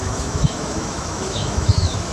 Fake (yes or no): yes